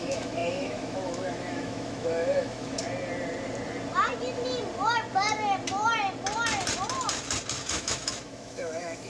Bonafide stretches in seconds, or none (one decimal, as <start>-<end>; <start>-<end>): 2.8-7.7